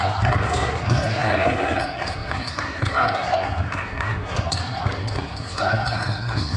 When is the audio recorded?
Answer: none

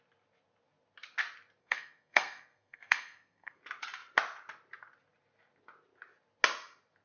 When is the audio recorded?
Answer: 0.0-1.6; 3.6-7.0

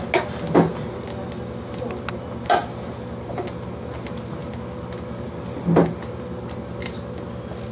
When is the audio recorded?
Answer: 0.0-7.7

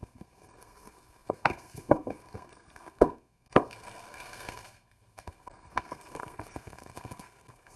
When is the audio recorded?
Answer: none